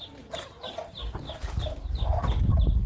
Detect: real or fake real